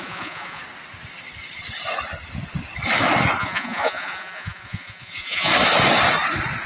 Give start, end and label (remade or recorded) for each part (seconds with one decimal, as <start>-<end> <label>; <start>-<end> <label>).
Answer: 0.0-0.6 remade; 0.6-3.4 recorded; 3.4-5.5 remade; 5.5-6.7 recorded